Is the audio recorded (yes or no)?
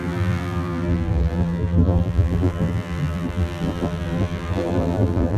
no